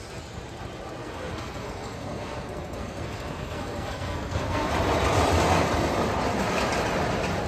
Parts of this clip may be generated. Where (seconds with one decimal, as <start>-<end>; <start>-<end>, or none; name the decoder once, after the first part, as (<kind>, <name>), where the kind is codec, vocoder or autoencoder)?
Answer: 1.0-4.7 (codec, SNAC)